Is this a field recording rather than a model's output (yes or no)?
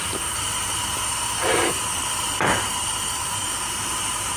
yes